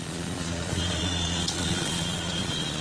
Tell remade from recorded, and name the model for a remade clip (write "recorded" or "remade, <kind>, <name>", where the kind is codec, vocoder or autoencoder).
remade, vocoder, Vocos